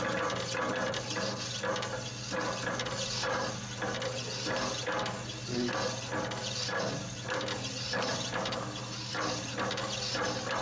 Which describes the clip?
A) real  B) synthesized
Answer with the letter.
A